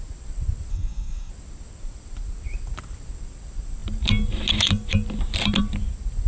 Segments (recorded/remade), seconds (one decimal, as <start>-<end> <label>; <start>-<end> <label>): 0.0-0.7 recorded; 0.7-1.3 remade; 1.3-6.3 recorded